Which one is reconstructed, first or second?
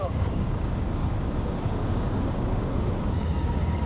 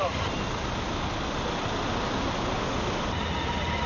first